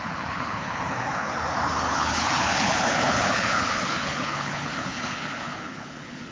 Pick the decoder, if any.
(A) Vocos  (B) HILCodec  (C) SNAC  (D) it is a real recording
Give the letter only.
B